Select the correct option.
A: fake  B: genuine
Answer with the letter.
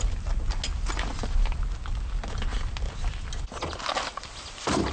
B